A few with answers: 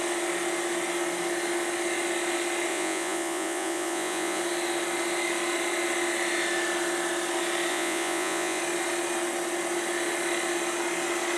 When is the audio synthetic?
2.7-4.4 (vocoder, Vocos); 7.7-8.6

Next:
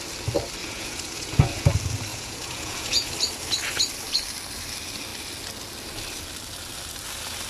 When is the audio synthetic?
0.6-1.7 (vocoder, Vocos); 2.1-3.1

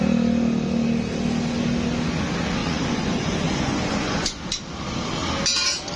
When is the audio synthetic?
2.6-4.4 (vocoder, Vocos)

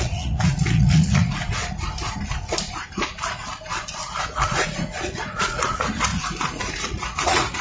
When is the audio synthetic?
0.0-1.6 (vocoder, Vocos); 4.2-7.6

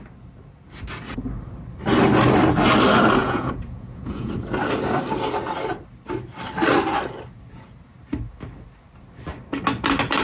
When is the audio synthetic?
3.2-4.3 (vocoder, Vocos)

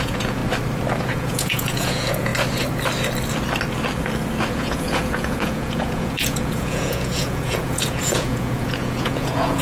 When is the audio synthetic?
0.0-0.4 (vocoder, Vocos); 1.0-2.3; 4.5-9.6

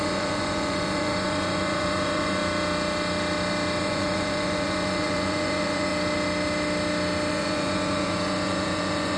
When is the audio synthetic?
0.0-2.4 (vocoder, Vocos); 3.8-5.9; 7.3-9.2